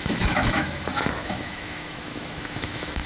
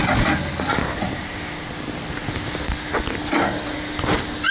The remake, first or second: first